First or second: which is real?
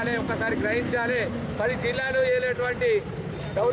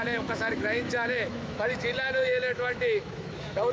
first